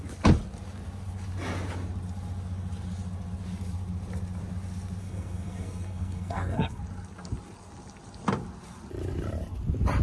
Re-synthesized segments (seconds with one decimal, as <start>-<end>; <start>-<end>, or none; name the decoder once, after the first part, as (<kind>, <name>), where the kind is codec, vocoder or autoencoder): 5.0-6.8 (codec, SNAC)